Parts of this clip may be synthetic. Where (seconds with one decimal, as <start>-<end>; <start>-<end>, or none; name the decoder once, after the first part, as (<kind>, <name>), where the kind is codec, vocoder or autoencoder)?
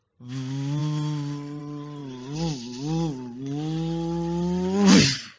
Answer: none